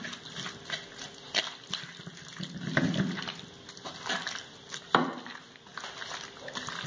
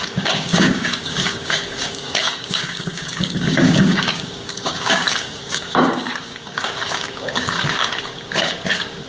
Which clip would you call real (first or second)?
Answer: first